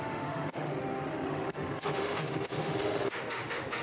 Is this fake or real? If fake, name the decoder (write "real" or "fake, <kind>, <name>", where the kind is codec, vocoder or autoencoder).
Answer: fake, autoencoder, DAC-VAE